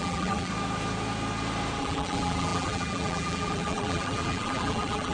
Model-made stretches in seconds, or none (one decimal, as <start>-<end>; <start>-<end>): 0.0-0.5; 1.8-5.1